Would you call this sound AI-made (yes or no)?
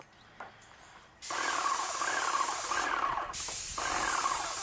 no